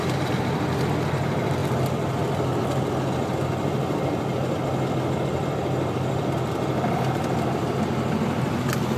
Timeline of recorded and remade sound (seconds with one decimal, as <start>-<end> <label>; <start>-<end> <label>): 0.0-9.0 recorded